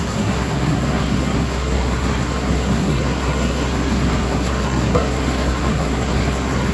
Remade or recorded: remade